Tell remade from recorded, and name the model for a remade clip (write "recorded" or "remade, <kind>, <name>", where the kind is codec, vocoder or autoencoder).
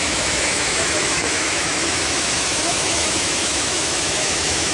remade, autoencoder, DAC-VAE